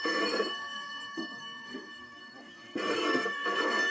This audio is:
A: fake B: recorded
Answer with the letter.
A